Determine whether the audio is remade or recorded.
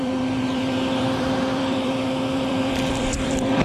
remade